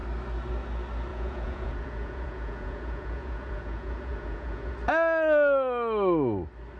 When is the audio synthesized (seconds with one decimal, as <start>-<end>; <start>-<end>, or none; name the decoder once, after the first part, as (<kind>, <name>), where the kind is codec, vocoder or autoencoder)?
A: 1.1-4.7 (vocoder, Vocos)